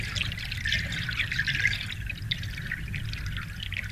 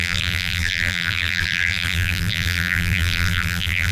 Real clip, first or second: first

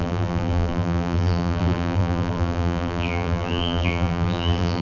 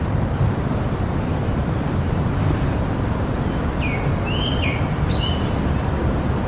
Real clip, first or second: second